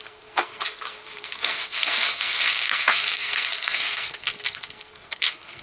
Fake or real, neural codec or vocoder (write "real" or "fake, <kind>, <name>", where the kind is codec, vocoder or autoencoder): fake, codec, SNAC